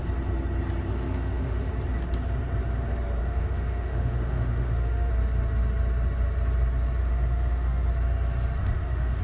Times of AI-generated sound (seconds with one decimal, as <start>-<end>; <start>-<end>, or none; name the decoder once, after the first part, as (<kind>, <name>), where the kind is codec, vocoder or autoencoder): 0.9-1.7 (autoencoder, DAC-VAE); 3.2-5.1; 7.0-7.9; 8.6-9.2